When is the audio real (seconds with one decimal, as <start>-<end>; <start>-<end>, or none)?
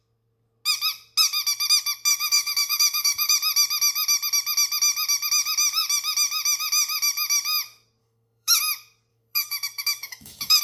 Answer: 0.0-2.1; 3.3-8.0; 8.6-9.1